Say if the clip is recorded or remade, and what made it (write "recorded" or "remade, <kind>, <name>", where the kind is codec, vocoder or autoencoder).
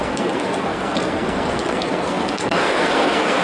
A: remade, codec, SNAC